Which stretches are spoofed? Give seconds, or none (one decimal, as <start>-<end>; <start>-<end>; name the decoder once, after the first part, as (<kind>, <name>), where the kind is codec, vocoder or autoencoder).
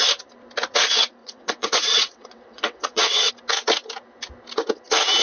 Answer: 1.2-3.3 (vocoder, WaveNeXt)